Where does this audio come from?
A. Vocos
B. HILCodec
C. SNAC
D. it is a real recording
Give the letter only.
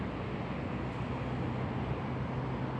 D